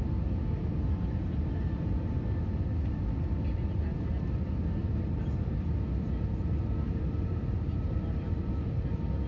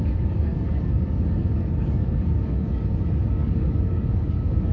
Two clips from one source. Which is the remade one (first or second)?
second